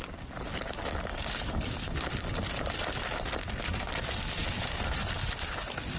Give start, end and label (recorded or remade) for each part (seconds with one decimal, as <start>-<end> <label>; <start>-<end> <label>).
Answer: 0.0-1.1 recorded; 1.1-1.7 remade; 1.7-6.0 recorded

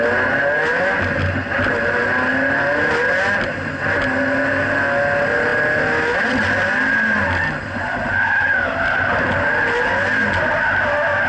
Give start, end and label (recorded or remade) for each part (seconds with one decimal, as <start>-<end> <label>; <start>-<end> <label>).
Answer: 0.0-11.3 recorded

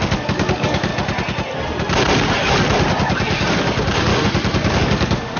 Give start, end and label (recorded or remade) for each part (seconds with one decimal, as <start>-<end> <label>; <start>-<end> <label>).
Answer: 0.0-0.9 remade; 0.9-3.5 recorded; 3.5-4.1 remade; 4.1-4.8 recorded; 4.8-5.4 remade

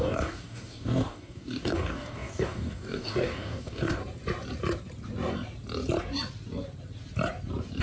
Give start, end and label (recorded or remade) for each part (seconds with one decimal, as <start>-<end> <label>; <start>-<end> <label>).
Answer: 0.0-4.0 remade; 4.0-7.8 recorded

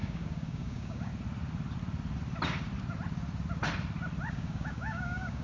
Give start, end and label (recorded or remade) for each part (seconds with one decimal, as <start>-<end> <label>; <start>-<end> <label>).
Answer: 0.0-1.1 remade; 1.1-4.3 recorded; 4.3-5.4 remade